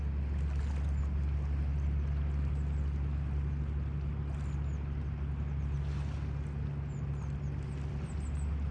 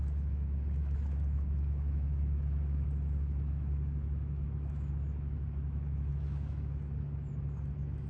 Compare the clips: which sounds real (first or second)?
first